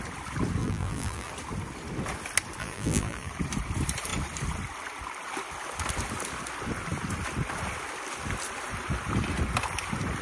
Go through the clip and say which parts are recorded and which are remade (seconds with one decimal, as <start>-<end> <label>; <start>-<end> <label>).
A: 0.0-0.6 recorded; 0.6-1.3 remade; 1.3-2.6 recorded; 2.6-3.3 remade; 3.3-10.2 recorded